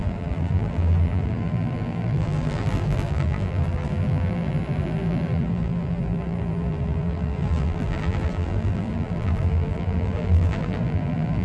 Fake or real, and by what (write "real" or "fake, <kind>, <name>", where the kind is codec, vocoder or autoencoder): fake, vocoder, BigVGAN v2